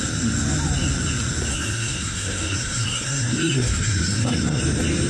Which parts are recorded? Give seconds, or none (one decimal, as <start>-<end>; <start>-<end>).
0.0-1.5; 4.6-5.1